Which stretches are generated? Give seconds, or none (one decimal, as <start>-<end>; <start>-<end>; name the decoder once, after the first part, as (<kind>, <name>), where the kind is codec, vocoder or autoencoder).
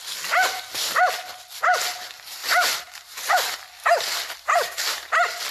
2.4-3.3 (vocoder, BigVGAN v2); 3.8-5.1